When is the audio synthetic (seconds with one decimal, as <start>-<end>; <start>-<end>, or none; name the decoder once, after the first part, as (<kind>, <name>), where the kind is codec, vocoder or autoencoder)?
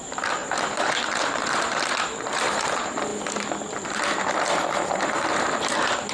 0.0-3.1 (vocoder, BigVGAN v2); 5.0-6.1